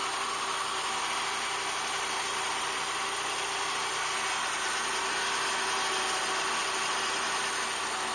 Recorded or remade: recorded